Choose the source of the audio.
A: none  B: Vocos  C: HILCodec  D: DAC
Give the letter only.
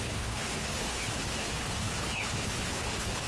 C